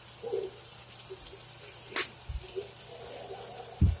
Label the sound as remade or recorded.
recorded